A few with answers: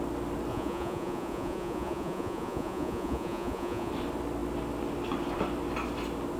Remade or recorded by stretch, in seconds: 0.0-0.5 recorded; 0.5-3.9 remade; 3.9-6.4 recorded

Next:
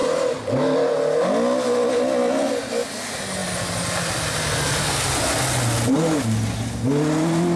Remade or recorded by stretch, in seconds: 0.0-7.6 recorded